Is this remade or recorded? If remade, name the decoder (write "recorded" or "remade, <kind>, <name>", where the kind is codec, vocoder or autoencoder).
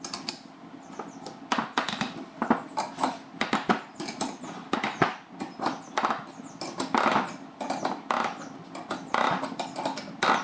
recorded